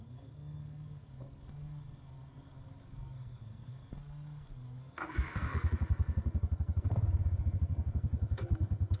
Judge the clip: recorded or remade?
remade